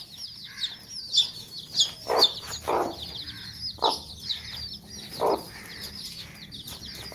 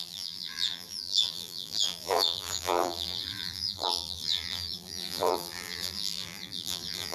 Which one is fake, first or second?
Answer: second